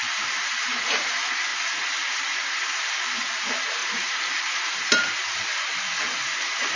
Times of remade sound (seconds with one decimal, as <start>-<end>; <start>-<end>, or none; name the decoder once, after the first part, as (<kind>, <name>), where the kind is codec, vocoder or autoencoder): 0.0-1.5 (vocoder, BigVGAN v2); 2.8-6.8